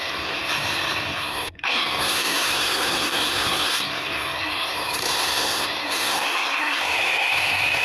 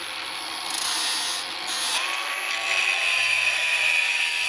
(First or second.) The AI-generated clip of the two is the first